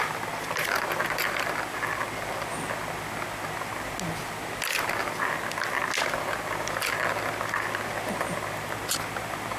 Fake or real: real